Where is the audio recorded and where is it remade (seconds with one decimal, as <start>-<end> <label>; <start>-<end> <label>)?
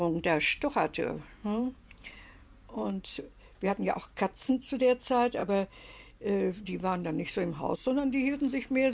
0.0-1.4 recorded; 1.4-4.5 remade; 4.5-8.9 recorded